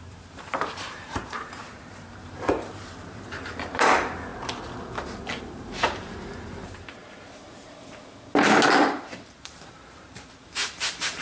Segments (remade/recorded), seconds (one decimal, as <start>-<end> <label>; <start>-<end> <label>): 0.0-4.3 remade; 4.3-5.4 recorded; 5.4-7.0 remade; 7.0-8.8 recorded; 8.8-11.2 remade